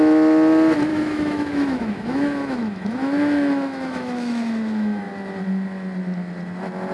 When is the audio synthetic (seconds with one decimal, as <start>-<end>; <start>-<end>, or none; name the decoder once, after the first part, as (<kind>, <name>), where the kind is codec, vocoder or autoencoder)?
0.9-5.0 (autoencoder, DAC-VAE)